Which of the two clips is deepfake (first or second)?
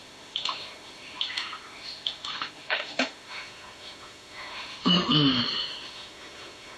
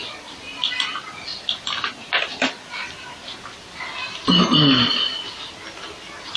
first